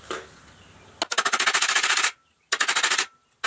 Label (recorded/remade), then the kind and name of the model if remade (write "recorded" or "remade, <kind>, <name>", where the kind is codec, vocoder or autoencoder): recorded